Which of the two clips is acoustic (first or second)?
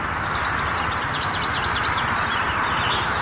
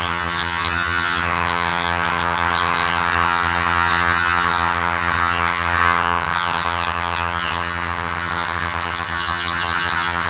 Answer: first